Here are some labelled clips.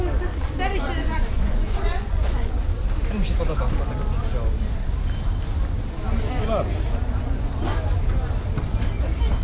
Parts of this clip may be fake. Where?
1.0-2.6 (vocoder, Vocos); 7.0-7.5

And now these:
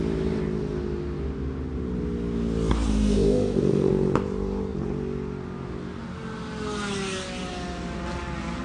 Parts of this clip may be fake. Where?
2.9-3.9 (autoencoder, DAC-VAE)